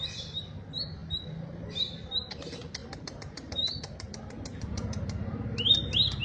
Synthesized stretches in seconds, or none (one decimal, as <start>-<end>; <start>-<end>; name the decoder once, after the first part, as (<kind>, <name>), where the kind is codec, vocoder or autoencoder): 2.8-4.1 (vocoder, BigVGAN v2); 4.5-5.0